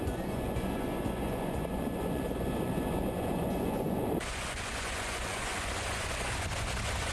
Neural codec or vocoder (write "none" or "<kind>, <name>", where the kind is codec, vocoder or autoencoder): vocoder, Vocos